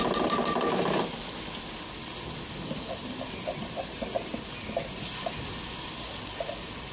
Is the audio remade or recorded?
recorded